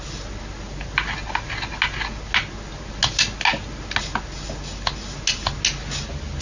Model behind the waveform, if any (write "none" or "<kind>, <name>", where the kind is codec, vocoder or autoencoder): none